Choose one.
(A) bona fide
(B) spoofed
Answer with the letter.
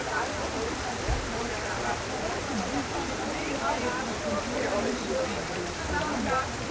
B